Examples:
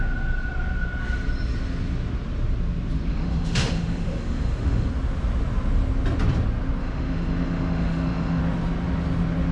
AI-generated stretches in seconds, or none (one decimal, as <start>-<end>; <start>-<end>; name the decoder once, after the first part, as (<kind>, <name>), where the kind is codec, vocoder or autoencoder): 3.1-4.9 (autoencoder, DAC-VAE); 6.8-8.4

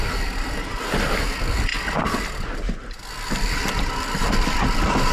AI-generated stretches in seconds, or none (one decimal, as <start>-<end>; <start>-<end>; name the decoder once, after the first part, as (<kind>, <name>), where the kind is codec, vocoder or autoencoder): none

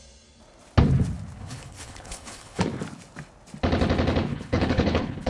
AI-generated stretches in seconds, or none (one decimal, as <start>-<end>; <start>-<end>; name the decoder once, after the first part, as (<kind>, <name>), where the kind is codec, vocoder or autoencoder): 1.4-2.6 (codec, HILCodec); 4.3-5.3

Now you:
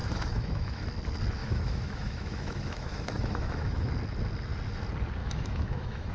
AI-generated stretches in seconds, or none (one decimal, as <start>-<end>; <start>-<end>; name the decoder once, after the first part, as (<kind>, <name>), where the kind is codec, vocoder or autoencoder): 0.0-0.8 (autoencoder, DAC-VAE); 1.4-3.9; 5.2-6.1